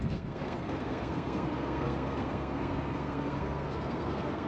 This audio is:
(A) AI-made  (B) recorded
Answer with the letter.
A